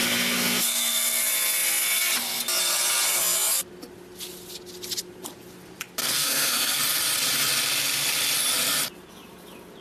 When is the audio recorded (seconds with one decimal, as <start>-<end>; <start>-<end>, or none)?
1.2-6.0; 6.8-9.8